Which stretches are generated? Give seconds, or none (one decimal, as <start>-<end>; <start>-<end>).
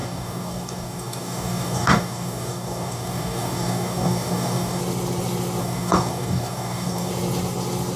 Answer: 0.0-4.8; 5.6-7.1